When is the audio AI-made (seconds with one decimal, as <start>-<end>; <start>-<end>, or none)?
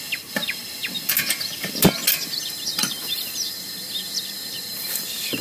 none